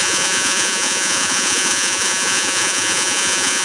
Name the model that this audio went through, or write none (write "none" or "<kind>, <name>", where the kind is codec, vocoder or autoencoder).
vocoder, Vocos